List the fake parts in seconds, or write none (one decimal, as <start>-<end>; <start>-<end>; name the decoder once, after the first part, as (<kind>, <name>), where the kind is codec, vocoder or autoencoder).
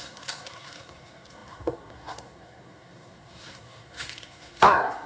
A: 0.0-5.1 (codec, SNAC)